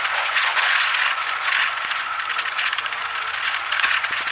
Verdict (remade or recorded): remade